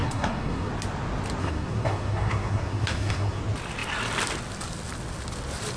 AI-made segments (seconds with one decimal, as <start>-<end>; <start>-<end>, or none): 0.0-0.7; 1.4-3.4